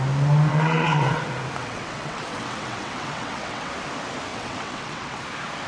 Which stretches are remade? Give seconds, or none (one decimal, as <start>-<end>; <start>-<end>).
0.5-1.2; 1.6-3.7; 4.3-5.2